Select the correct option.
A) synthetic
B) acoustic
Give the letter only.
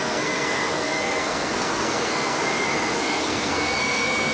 A